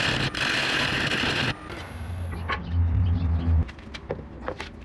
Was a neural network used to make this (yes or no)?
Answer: no